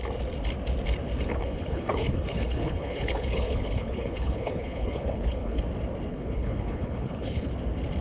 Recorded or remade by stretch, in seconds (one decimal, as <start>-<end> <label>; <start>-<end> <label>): 0.0-1.3 recorded; 1.3-5.6 remade; 5.6-6.1 recorded; 6.1-7.5 remade; 7.5-8.0 recorded